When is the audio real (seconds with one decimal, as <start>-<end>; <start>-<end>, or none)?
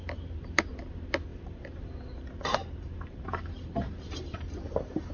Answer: 0.0-1.3; 2.0-2.6